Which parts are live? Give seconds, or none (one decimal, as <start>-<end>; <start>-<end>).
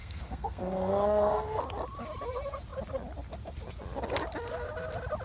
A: 1.6-5.2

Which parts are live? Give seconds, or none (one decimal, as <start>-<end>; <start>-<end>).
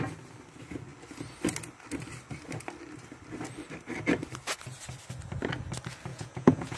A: 0.0-6.1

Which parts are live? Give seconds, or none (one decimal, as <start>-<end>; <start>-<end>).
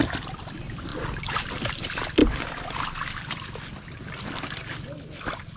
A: 0.0-5.6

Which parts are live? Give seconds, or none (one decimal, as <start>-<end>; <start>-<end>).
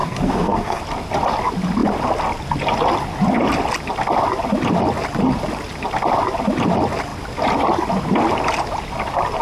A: 0.8-9.4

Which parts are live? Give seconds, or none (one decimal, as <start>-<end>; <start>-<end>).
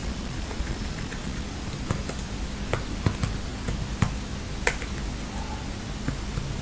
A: 1.5-6.6